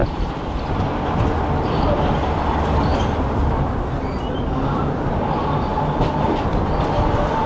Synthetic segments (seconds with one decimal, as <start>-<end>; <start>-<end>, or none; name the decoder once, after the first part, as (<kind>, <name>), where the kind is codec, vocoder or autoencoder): none